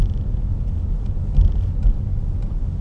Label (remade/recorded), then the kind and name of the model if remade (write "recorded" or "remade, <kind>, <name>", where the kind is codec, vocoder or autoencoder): recorded